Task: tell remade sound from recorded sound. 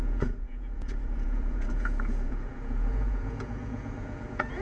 remade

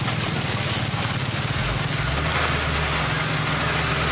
recorded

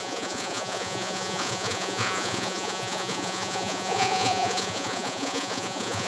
remade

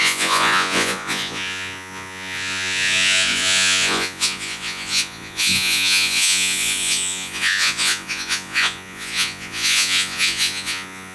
remade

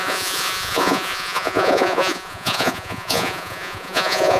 remade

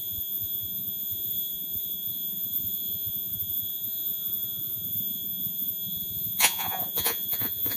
remade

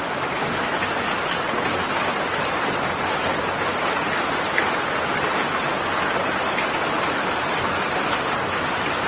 recorded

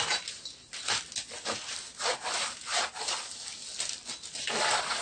recorded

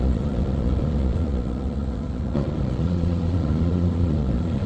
remade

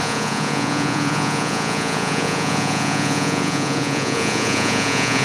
remade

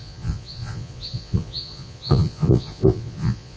remade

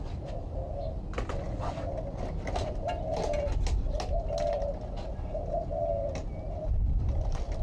recorded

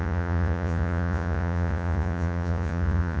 remade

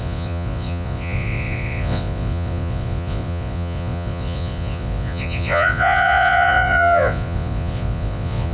remade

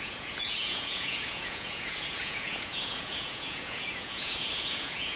remade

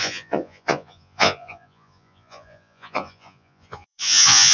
remade